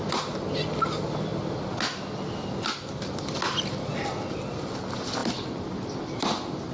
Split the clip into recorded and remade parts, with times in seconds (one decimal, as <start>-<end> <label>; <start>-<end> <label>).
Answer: 0.0-5.2 recorded; 5.2-6.7 remade